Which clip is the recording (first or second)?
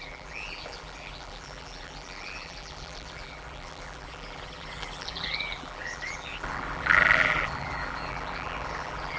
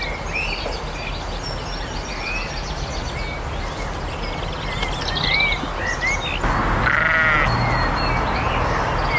second